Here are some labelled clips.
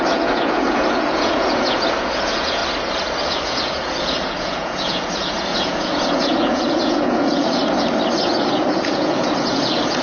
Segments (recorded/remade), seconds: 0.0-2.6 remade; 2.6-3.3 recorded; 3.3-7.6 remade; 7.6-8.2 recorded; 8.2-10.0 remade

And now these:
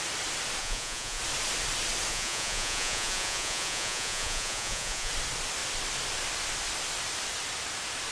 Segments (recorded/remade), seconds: 0.0-0.6 recorded; 0.6-1.2 remade; 1.2-2.1 recorded; 2.1-5.1 remade; 5.1-8.1 recorded